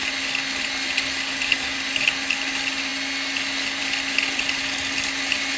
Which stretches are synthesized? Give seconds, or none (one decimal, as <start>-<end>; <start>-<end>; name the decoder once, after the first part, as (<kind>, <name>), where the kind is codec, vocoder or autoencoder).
none